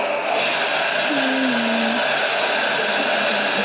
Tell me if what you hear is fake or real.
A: real